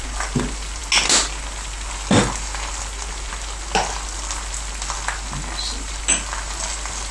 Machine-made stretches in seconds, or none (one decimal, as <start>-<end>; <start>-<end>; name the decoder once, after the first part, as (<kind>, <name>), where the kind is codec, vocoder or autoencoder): none

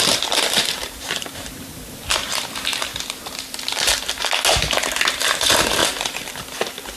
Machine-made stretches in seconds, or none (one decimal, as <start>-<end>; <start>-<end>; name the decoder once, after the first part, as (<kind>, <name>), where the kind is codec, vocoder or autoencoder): 0.0-2.9 (vocoder, BigVGAN v2); 5.1-7.0

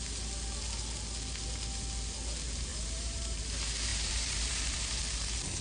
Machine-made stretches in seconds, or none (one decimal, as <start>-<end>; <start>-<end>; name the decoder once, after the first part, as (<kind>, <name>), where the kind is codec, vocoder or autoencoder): 2.7-3.4 (vocoder, BigVGAN v2); 3.9-5.0